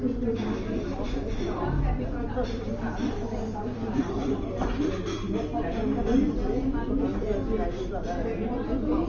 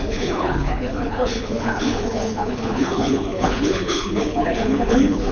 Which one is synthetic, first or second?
second